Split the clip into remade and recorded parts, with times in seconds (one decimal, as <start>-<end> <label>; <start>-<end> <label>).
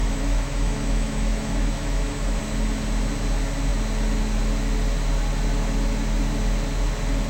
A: 0.0-2.4 remade; 2.4-7.3 recorded